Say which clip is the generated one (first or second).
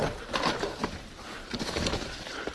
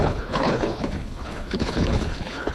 second